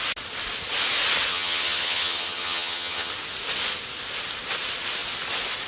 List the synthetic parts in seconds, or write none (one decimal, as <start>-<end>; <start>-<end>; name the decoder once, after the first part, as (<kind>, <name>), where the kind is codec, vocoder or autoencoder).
1.3-3.1 (vocoder, HiFi-GAN)